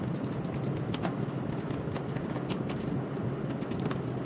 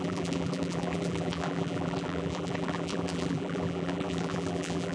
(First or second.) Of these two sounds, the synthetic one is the second